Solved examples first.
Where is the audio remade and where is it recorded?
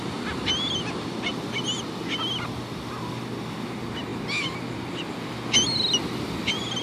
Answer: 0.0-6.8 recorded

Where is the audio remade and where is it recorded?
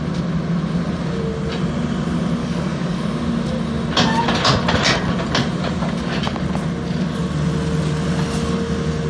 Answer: 0.0-2.4 recorded; 2.4-3.0 remade; 3.0-9.1 recorded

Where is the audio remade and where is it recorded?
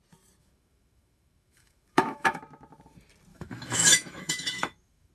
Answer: 0.0-0.4 recorded; 0.4-2.4 remade; 2.4-3.3 recorded; 3.3-5.1 remade